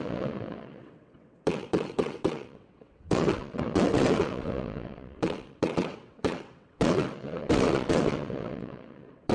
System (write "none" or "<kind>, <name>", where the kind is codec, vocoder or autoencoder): vocoder, WaveNeXt